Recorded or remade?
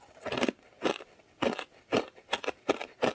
recorded